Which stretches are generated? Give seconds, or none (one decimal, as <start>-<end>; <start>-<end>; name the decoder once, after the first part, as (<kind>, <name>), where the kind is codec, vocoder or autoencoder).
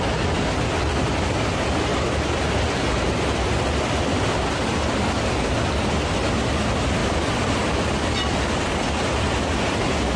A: 1.9-2.5 (vocoder, BigVGAN v2); 7.0-8.4